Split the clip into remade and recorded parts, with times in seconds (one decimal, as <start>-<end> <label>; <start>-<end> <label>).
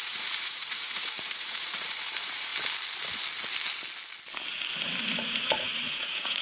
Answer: 0.0-2.5 remade; 2.5-5.0 recorded; 5.0-6.4 remade